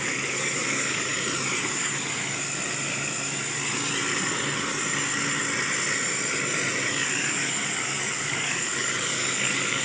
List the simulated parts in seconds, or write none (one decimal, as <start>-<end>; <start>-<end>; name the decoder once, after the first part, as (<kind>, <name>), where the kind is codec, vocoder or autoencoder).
0.0-1.1 (codec, DAC); 1.6-2.2; 6.9-9.8